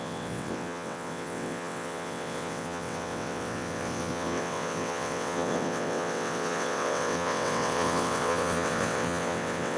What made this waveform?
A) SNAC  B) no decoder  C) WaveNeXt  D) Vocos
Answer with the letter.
C